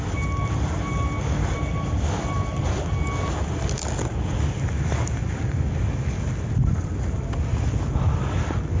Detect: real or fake real